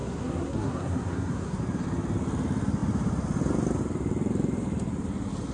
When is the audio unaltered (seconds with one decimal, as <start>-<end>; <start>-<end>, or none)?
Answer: 1.6-5.5